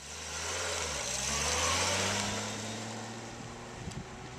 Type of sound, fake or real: real